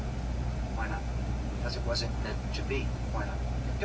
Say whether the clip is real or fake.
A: real